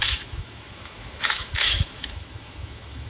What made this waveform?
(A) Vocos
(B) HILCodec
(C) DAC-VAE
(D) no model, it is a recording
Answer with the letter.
C